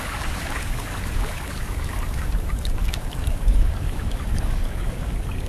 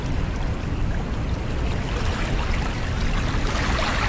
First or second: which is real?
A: second